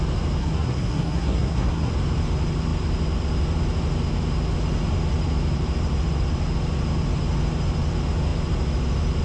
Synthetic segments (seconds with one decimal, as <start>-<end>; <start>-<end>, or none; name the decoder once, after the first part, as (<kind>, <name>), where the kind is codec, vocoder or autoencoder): 0.4-1.9 (codec, SNAC)

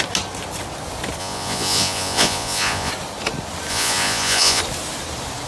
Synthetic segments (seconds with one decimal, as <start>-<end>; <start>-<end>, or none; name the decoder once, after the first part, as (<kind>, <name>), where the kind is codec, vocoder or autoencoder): 1.2-2.9 (vocoder, Vocos); 3.7-4.6

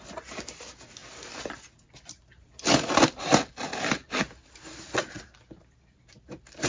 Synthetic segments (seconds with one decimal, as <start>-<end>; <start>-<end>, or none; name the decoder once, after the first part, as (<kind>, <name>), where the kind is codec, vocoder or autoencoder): none